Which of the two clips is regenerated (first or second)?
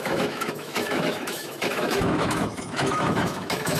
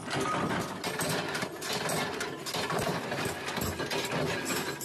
first